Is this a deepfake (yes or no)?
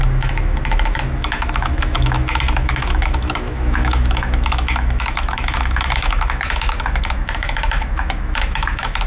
yes